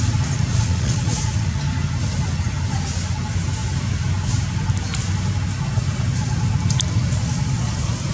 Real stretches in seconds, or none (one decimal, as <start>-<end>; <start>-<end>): 0.0-0.5; 1.6-8.1